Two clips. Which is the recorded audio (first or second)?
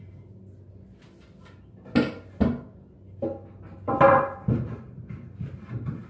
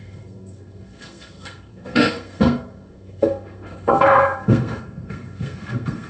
first